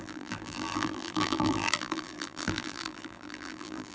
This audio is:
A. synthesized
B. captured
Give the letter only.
A